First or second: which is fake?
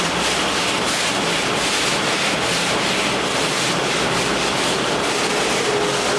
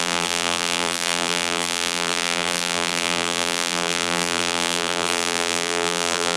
second